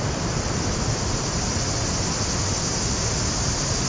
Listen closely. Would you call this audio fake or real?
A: real